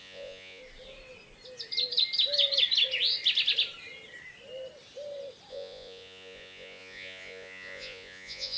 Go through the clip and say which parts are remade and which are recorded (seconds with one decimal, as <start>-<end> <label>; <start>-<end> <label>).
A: 0.0-0.6 remade; 0.6-5.5 recorded; 5.5-8.6 remade